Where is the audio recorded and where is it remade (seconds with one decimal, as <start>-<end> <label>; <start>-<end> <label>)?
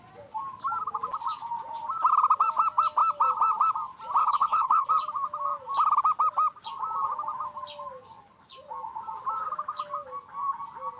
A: 0.0-4.2 recorded; 4.2-4.9 remade; 4.9-11.0 recorded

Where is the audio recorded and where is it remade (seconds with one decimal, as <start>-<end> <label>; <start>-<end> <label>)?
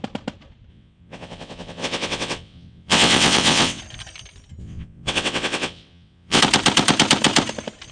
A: 0.0-0.7 recorded; 0.7-3.8 remade; 3.8-4.6 recorded; 4.6-6.4 remade; 6.4-7.9 recorded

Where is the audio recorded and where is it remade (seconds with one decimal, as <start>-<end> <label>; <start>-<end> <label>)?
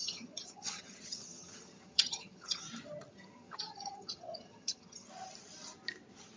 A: 0.0-2.6 remade; 2.6-3.1 recorded; 3.1-5.1 remade; 5.1-6.4 recorded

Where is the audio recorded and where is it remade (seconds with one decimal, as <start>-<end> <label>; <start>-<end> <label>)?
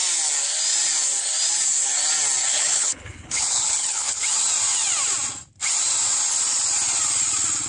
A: 0.0-2.5 recorded; 2.5-4.2 remade; 4.2-7.7 recorded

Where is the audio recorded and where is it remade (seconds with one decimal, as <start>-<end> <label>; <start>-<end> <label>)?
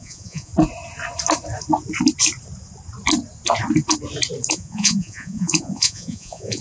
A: 0.0-0.5 remade; 0.5-4.5 recorded; 4.5-6.6 remade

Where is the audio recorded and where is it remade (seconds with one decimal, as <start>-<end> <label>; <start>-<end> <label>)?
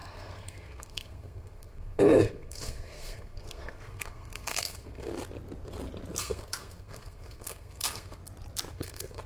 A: 0.0-5.1 remade; 5.1-6.2 recorded; 6.2-8.2 remade; 8.2-8.7 recorded; 8.7-9.3 remade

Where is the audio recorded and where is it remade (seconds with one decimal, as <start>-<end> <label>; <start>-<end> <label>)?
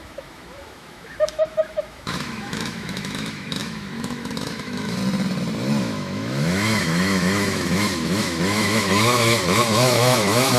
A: 0.0-5.0 remade; 5.0-5.8 recorded; 5.8-10.6 remade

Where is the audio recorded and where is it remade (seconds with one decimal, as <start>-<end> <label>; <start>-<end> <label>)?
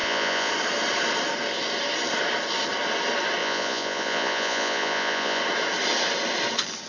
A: 0.0-0.5 remade; 0.5-3.4 recorded; 3.4-5.4 remade; 5.4-6.9 recorded